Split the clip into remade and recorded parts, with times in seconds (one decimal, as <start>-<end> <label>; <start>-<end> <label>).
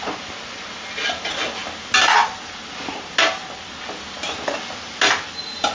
0.0-5.7 recorded